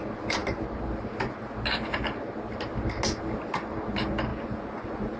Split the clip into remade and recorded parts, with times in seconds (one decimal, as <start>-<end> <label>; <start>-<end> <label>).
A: 0.0-4.3 recorded; 4.3-5.2 remade